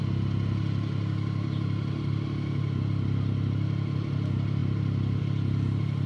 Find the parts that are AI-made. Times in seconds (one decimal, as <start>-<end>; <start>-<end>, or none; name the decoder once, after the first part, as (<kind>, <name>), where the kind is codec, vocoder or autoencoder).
none